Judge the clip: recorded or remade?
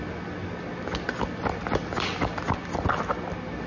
recorded